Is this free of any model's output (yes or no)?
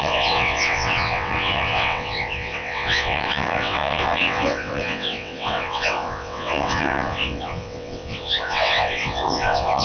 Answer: no